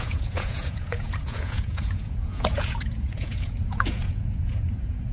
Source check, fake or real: fake